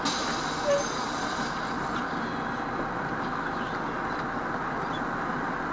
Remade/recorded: recorded